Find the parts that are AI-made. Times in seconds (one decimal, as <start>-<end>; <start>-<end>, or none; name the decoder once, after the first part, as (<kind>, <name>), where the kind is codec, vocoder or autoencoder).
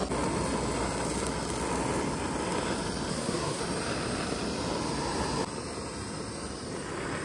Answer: 3.1-3.6 (codec, SNAC)